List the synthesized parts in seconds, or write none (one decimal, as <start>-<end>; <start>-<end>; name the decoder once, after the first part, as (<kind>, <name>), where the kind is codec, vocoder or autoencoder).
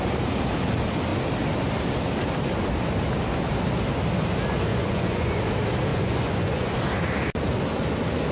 4.7-5.4 (vocoder, Vocos); 5.9-6.8